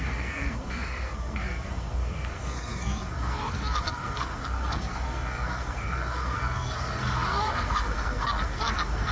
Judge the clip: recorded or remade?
remade